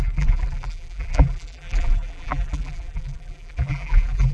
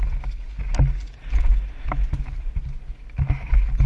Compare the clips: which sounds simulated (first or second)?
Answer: first